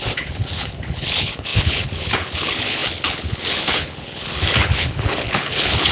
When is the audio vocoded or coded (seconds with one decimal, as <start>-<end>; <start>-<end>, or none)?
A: 0.0-5.9